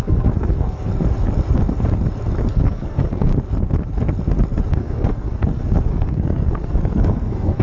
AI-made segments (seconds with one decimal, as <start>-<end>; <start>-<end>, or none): 0.0-0.9; 2.5-3.3; 4.7-7.6